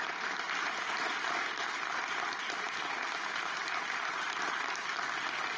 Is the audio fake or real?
fake